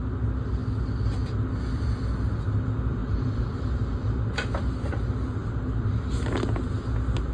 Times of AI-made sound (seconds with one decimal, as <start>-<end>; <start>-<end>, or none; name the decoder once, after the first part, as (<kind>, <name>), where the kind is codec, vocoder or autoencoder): 3.0-3.7 (vocoder, BigVGAN v2)